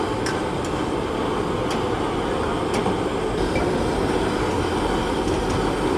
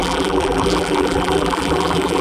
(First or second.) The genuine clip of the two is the first